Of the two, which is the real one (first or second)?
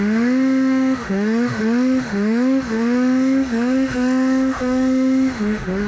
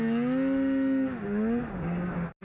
second